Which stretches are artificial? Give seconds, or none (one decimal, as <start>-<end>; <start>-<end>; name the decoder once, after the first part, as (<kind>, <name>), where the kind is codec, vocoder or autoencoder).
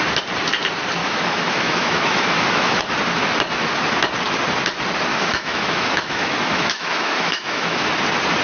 1.0-2.8 (autoencoder, DAC-VAE); 5.1-7.9